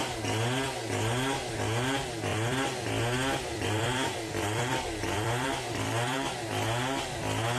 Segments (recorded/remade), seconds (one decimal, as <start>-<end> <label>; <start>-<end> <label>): 0.0-2.3 recorded; 2.3-2.9 remade; 2.9-3.5 recorded; 3.5-6.3 remade; 6.3-7.6 recorded